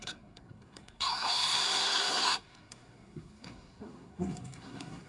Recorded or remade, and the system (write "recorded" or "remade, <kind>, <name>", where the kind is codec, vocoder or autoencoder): remade, codec, SNAC